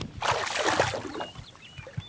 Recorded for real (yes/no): yes